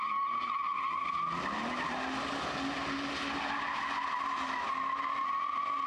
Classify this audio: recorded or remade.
recorded